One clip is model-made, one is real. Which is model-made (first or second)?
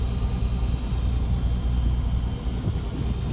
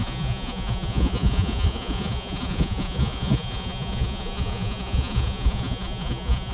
second